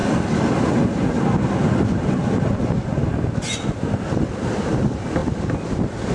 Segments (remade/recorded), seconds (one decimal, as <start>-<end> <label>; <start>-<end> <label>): 0.0-6.1 recorded